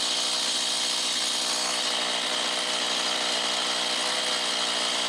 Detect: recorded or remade recorded